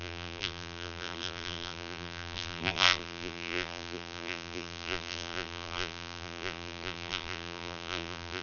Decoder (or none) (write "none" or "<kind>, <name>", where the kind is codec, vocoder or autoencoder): vocoder, BigVGAN v2